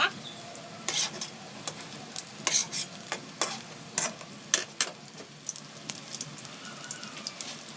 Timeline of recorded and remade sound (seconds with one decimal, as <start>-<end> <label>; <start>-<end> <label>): 0.0-7.8 recorded